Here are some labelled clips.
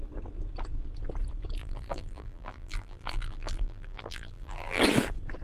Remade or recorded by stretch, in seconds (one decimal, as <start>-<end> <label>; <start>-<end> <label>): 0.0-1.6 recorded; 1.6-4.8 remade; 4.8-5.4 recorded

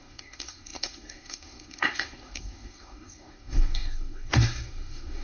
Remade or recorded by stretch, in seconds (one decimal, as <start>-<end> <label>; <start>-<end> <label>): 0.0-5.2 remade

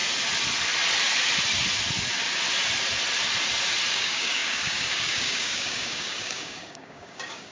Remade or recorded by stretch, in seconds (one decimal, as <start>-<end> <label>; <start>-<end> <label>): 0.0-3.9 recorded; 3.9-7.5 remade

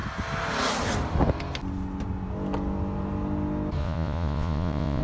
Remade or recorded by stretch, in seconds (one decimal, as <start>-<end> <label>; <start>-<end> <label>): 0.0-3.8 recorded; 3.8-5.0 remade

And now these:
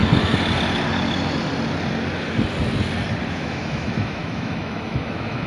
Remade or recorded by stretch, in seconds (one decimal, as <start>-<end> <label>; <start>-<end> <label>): 0.0-3.3 recorded; 3.3-5.5 remade

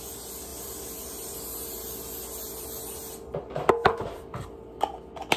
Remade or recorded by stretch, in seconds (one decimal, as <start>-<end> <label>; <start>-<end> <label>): 0.0-0.5 recorded; 0.5-3.7 remade; 3.7-5.4 recorded

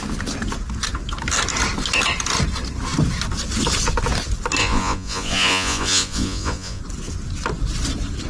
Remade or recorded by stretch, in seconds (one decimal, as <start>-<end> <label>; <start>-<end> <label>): 0.0-4.6 recorded; 4.6-6.8 remade; 6.8-8.3 recorded

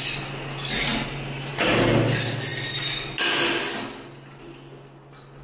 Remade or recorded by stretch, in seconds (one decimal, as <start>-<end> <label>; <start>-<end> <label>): 0.0-5.4 recorded